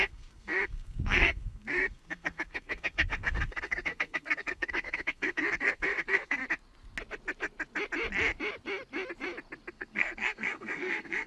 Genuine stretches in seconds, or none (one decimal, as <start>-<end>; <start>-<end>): 6.4-9.7